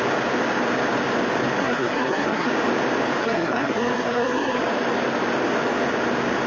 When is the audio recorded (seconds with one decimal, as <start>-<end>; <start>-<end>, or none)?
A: 0.0-1.6; 2.5-3.2; 4.6-6.5

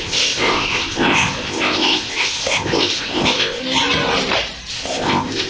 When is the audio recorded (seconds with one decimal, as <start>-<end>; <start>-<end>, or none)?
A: 3.6-4.7